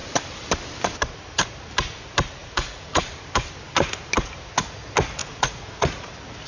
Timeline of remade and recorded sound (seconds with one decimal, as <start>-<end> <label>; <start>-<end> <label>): 0.0-2.4 recorded; 2.4-3.0 remade; 3.0-5.2 recorded; 5.2-6.1 remade; 6.1-6.5 recorded